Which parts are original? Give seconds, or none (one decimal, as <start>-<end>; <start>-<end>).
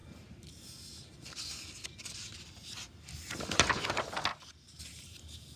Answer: 0.0-5.6